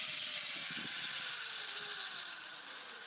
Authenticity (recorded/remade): recorded